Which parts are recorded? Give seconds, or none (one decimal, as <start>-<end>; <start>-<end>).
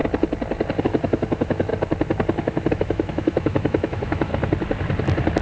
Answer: 0.0-0.8; 1.7-2.7; 4.3-5.4